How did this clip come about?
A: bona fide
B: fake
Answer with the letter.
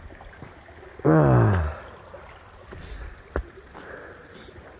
A